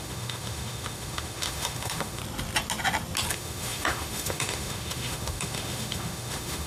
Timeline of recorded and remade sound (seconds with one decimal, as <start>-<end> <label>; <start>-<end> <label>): 0.0-2.2 remade; 2.2-3.3 recorded; 3.3-6.7 remade